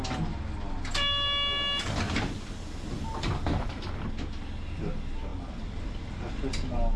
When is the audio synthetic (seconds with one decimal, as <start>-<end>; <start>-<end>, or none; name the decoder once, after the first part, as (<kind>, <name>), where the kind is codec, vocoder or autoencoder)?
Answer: none

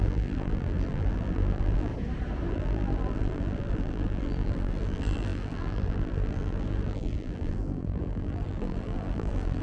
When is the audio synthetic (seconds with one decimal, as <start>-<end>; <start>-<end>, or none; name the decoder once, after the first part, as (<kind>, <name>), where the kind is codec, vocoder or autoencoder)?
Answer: 0.0-1.9 (vocoder, BigVGAN v2); 2.5-9.6

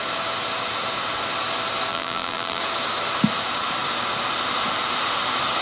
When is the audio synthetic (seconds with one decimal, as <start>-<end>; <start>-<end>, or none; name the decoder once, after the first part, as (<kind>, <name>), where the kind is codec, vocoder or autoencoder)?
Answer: 1.9-2.6 (vocoder, BigVGAN v2)

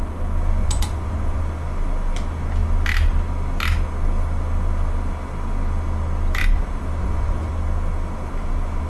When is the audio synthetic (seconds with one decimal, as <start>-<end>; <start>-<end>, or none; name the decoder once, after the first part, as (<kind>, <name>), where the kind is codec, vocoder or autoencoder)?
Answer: 0.6-1.4 (vocoder, Vocos); 7.0-7.5

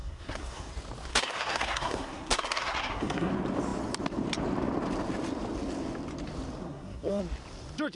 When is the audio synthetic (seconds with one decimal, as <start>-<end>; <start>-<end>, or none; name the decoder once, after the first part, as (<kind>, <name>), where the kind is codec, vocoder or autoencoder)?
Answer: 0.0-0.7 (codec, SNAC); 1.1-3.3; 6.6-7.2